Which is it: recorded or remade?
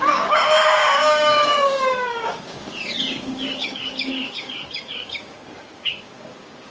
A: remade